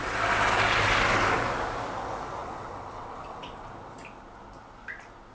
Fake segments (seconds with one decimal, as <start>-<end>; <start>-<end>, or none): 2.4-3.7